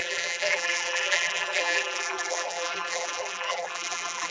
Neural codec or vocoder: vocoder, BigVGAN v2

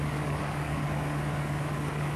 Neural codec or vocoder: codec, DAC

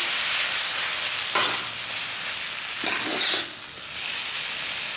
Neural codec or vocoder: none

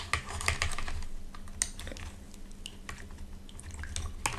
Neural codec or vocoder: none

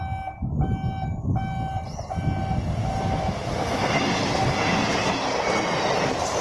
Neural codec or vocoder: none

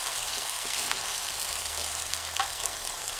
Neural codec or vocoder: codec, SNAC